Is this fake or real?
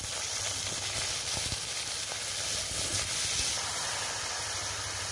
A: real